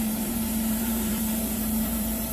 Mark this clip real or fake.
fake